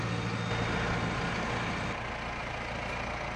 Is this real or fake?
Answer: real